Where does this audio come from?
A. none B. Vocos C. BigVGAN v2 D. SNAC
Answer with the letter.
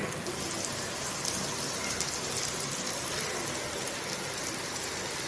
A